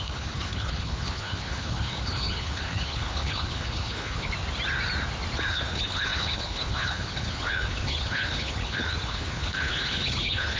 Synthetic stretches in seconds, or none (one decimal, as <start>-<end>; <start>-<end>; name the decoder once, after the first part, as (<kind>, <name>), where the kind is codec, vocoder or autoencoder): 0.0-4.3 (codec, HILCodec); 5.5-10.6